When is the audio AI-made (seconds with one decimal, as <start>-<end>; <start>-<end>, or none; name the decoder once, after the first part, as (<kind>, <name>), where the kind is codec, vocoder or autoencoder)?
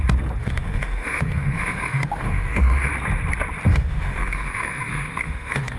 0.4-2.9 (autoencoder, DAC-VAE); 3.7-5.8